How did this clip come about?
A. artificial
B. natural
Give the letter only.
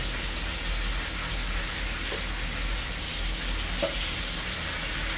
B